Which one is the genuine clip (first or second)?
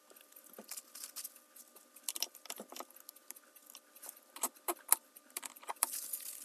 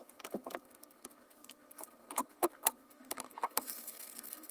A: first